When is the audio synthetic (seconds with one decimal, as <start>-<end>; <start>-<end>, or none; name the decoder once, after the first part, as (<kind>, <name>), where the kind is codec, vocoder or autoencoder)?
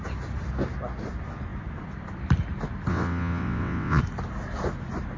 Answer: 2.9-4.0 (vocoder, WaveNeXt)